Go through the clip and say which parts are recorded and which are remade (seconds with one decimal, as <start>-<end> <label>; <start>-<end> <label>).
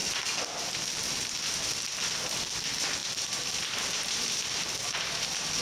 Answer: 0.0-3.0 recorded; 3.0-5.6 remade